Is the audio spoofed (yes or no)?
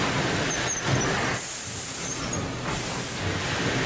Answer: no